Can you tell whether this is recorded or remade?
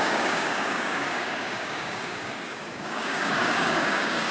remade